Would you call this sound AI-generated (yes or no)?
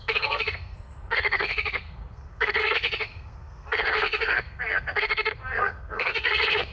yes